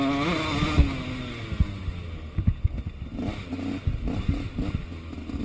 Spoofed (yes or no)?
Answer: no